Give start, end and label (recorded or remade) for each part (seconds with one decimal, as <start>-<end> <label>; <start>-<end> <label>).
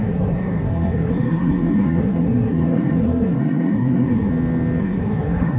0.0-4.3 remade; 4.3-4.8 recorded; 4.8-5.6 remade